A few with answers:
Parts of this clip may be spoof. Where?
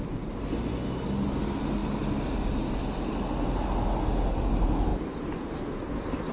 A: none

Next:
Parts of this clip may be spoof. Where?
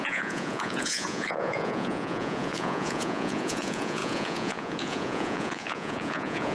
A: 0.0-6.5 (vocoder, Vocos)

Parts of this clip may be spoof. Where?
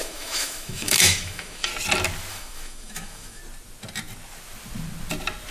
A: 0.0-1.7 (autoencoder, DAC-VAE); 2.3-3.4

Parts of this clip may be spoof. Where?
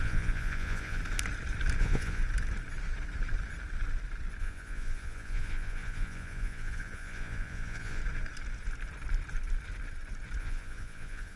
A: 0.0-1.0 (vocoder, Vocos); 1.8-2.2; 4.4-8.0; 10.4-11.4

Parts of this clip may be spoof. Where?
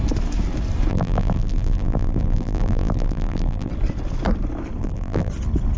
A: 0.9-3.7 (vocoder, BigVGAN v2); 4.8-5.3